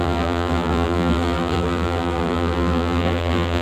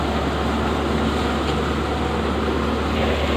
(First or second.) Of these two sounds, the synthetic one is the first